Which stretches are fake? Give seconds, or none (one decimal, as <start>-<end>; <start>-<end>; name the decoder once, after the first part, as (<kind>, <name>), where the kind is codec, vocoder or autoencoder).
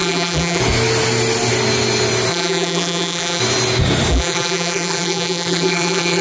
0.0-0.6 (vocoder, BigVGAN v2); 2.3-3.4; 4.1-6.2